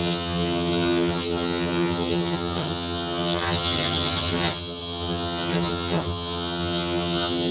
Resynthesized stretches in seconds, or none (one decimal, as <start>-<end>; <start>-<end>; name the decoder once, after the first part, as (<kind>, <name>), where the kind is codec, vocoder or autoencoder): 0.0-7.5 (vocoder, HiFi-GAN)